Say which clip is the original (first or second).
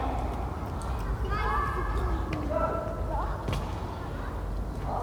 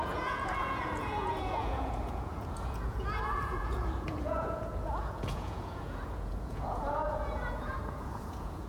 first